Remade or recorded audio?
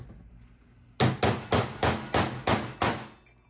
recorded